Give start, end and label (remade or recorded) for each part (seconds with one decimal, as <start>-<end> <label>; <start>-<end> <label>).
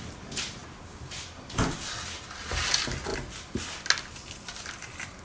0.0-5.2 recorded